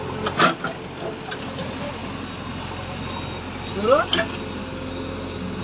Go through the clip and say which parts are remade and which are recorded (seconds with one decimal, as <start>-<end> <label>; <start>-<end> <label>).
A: 0.0-4.6 recorded; 4.6-5.6 remade